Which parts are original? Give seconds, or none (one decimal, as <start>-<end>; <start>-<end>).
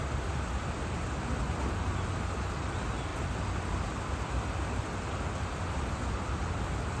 0.0-7.0